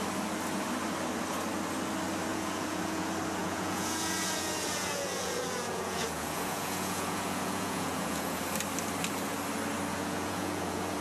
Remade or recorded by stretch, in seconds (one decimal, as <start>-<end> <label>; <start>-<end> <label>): 0.0-2.3 recorded; 2.3-3.0 remade; 3.0-3.4 recorded; 3.4-8.4 remade; 8.4-9.9 recorded; 9.9-11.0 remade